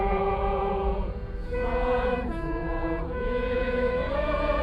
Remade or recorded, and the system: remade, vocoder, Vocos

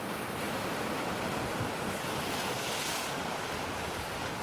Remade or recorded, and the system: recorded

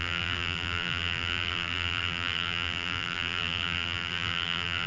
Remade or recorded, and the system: remade, vocoder, BigVGAN v2